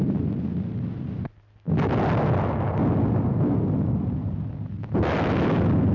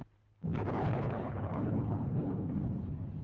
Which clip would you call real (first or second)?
first